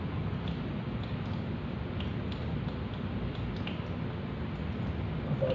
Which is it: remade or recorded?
recorded